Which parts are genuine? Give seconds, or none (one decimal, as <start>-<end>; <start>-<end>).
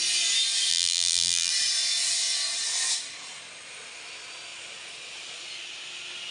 0.0-0.7; 1.5-6.3